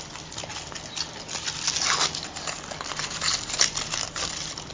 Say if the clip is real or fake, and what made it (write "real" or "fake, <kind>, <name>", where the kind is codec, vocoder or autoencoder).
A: real